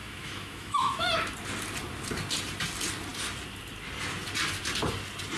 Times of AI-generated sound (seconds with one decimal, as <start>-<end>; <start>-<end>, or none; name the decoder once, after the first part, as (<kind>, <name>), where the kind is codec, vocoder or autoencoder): 0.0-1.1 (autoencoder, DAC-VAE)